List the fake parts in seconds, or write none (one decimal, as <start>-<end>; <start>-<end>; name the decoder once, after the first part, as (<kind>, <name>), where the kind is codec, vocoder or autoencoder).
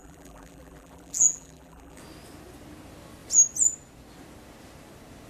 0.0-2.0 (vocoder, BigVGAN v2)